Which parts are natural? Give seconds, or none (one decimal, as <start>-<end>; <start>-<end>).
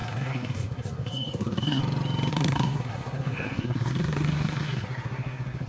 1.8-2.3